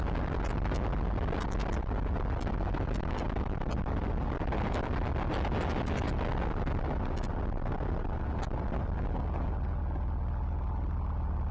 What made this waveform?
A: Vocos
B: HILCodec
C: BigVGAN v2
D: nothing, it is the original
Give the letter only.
D